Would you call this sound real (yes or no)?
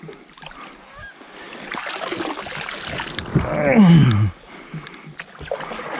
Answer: yes